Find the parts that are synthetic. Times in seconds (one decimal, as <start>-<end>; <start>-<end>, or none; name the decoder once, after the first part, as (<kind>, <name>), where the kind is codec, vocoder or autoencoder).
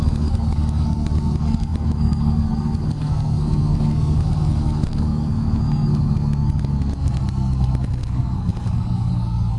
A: 0.0-9.6 (codec, SNAC)